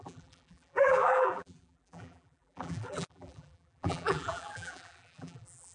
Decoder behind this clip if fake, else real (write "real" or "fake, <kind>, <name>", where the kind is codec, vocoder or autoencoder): fake, vocoder, BigVGAN v2